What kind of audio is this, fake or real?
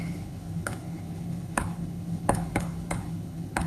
fake